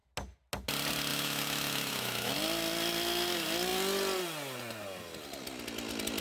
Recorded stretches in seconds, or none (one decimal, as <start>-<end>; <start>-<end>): 0.0-1.1; 2.3-6.2